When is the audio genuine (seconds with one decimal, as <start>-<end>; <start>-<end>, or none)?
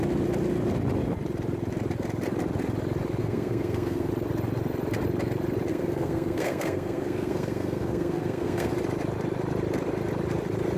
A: 0.0-3.2; 4.1-5.7; 8.7-10.8